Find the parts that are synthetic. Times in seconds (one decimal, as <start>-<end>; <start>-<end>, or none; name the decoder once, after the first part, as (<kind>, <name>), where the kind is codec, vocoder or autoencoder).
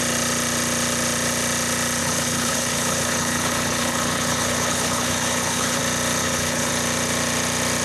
2.0-5.8 (codec, HILCodec); 6.2-6.7